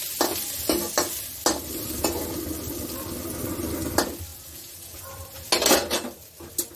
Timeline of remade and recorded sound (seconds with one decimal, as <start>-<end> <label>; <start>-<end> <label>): 0.0-4.3 recorded; 4.3-5.0 remade; 5.0-6.8 recorded

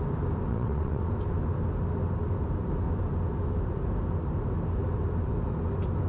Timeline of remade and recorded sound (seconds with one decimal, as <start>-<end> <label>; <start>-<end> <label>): 0.0-0.5 recorded; 0.5-1.1 remade; 1.1-6.1 recorded

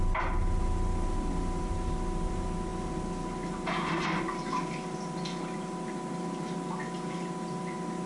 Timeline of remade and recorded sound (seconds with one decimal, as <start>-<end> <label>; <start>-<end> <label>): 0.0-8.1 recorded

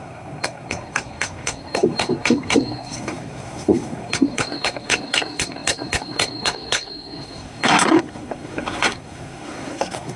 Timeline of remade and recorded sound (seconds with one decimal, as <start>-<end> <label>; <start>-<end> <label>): 0.0-10.2 remade

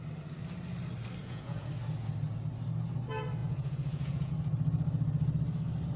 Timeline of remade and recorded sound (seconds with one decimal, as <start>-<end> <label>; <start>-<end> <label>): 0.0-1.2 recorded; 1.2-1.7 remade; 1.7-3.4 recorded; 3.4-4.3 remade; 4.3-6.0 recorded